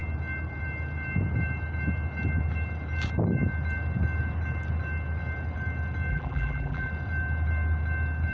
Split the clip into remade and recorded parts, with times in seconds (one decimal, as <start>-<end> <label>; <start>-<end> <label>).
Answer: 0.0-6.1 recorded; 6.1-6.9 remade; 6.9-8.3 recorded